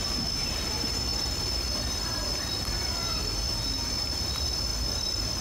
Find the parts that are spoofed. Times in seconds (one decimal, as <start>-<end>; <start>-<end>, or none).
1.1-2.5; 4.7-5.4